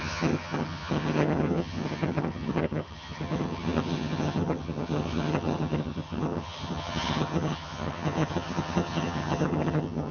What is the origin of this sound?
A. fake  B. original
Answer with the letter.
A